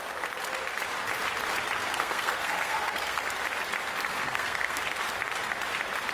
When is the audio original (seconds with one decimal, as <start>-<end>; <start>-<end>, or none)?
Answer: 0.0-1.8; 3.2-4.2; 4.8-6.1